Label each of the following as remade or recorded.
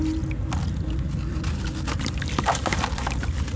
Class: recorded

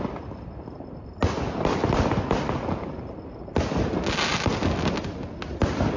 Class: recorded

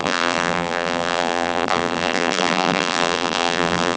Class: remade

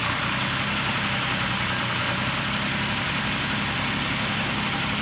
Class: recorded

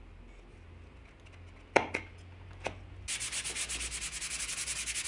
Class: recorded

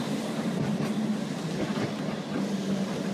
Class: recorded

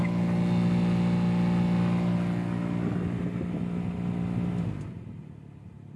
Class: recorded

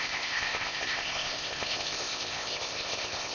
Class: remade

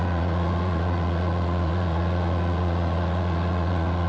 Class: remade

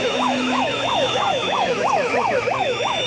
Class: remade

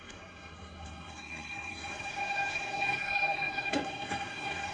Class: remade